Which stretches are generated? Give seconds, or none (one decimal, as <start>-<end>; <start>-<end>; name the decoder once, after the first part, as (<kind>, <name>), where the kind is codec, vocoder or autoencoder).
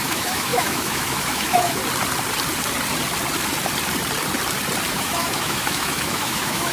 0.0-1.8 (autoencoder, DAC-VAE); 4.9-6.7